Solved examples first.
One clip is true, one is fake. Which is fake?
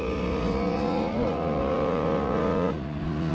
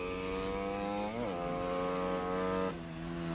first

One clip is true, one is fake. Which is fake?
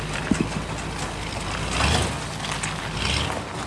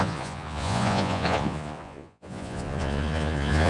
second